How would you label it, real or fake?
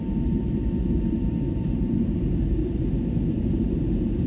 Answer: fake